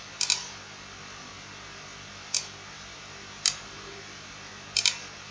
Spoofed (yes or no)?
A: no